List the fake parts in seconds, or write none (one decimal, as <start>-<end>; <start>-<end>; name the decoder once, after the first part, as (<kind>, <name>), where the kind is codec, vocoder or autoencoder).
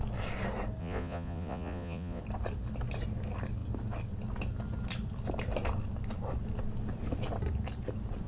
0.8-2.2 (vocoder, Vocos)